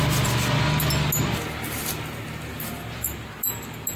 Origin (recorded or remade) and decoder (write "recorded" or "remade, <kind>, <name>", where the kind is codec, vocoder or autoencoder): recorded